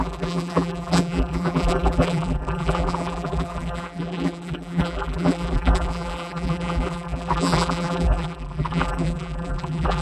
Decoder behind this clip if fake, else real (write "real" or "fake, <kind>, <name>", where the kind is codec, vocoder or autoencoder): fake, vocoder, BigVGAN v2